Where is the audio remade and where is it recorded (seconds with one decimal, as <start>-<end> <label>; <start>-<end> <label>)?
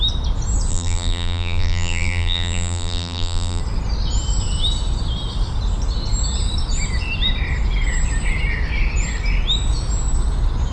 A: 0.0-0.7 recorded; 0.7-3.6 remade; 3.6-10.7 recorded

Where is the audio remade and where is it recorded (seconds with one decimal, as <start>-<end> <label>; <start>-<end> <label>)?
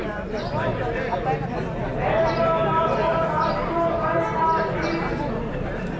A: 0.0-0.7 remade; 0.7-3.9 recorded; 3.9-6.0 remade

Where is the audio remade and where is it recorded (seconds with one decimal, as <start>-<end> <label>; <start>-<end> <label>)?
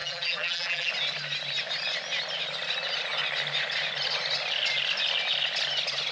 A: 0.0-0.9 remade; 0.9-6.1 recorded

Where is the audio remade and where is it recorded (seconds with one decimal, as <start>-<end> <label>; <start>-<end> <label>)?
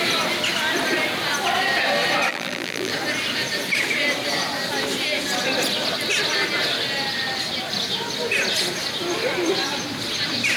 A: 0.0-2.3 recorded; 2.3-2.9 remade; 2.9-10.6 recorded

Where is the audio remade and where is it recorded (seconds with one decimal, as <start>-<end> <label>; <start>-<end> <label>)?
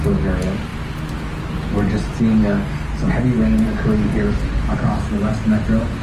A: 0.0-6.0 recorded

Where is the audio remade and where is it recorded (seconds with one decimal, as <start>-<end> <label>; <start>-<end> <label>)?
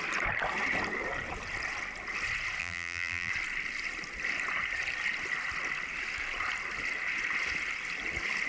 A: 0.0-2.6 recorded; 2.6-3.3 remade; 3.3-8.5 recorded